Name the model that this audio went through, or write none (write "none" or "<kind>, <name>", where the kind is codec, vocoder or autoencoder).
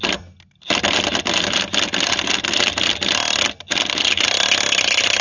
none